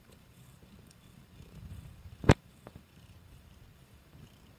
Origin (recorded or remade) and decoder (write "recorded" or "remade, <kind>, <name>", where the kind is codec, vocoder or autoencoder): remade, vocoder, BigVGAN v2